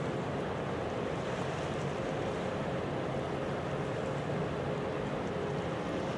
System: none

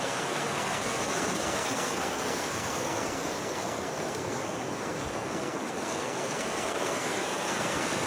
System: codec, SNAC